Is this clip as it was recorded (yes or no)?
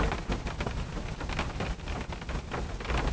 yes